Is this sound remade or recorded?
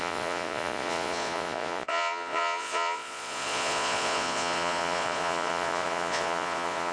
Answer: remade